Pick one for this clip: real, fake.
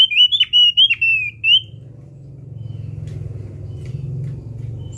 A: real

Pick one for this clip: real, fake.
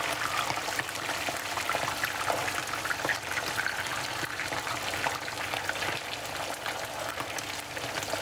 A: real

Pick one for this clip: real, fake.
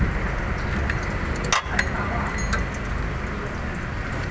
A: real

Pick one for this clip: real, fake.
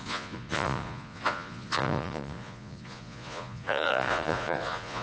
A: fake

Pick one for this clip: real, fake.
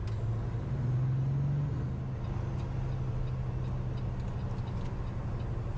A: real